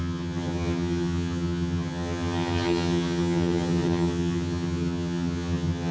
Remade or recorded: remade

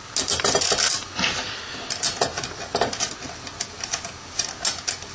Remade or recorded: recorded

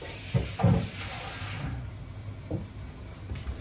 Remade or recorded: recorded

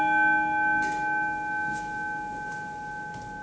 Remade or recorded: recorded